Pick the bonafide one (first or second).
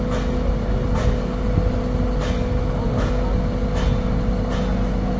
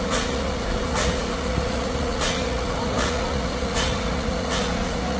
first